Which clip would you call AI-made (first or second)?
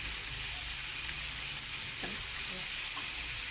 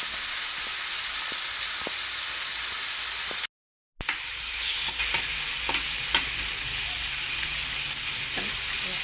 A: first